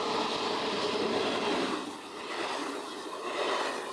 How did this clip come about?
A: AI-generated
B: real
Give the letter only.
B